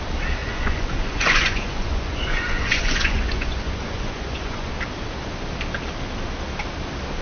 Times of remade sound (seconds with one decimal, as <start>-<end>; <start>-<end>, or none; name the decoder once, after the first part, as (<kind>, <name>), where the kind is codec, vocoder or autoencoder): 0.4-4.7 (vocoder, Vocos)